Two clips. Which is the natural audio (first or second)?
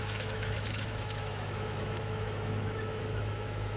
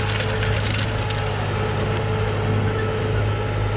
second